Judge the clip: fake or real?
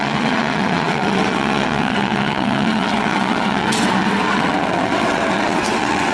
fake